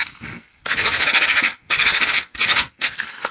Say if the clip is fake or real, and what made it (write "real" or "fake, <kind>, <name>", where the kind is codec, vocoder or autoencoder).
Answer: fake, codec, SNAC